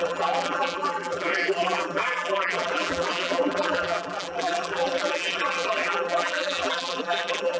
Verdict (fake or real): fake